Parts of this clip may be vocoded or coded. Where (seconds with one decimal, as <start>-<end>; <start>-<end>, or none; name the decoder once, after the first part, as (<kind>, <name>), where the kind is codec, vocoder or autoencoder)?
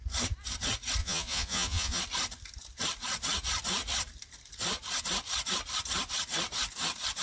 1.0-2.0 (vocoder, Vocos)